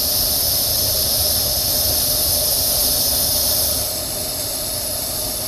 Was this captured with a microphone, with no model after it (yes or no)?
yes